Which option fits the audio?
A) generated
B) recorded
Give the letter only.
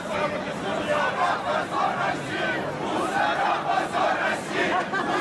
B